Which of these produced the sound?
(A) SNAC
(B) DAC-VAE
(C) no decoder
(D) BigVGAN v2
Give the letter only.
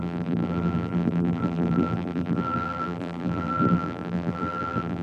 D